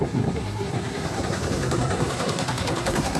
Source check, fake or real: fake